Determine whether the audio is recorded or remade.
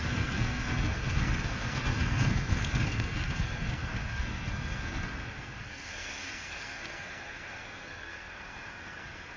remade